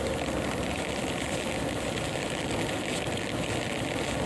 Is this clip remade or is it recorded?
recorded